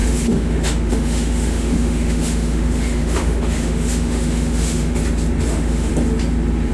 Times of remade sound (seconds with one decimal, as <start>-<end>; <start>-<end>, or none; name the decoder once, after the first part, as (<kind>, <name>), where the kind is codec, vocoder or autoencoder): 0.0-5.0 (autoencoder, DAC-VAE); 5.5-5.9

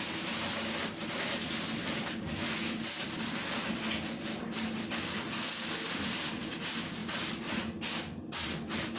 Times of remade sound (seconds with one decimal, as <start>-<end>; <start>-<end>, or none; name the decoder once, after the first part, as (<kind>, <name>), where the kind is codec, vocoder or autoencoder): none

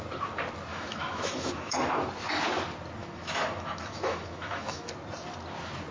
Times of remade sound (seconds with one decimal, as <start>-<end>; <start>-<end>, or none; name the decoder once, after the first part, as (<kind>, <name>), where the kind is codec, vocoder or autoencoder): 0.7-2.1 (autoencoder, DAC-VAE); 3.0-4.9